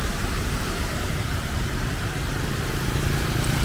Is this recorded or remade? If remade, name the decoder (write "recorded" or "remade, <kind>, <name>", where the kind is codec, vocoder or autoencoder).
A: remade, vocoder, BigVGAN v2